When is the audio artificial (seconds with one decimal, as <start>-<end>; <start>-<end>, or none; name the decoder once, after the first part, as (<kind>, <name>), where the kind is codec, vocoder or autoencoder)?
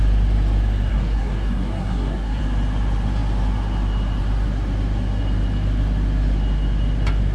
0.9-2.4 (codec, SNAC)